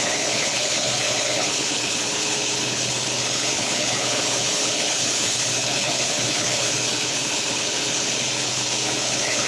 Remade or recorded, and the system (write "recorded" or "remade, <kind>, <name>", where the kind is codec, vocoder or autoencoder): remade, codec, HILCodec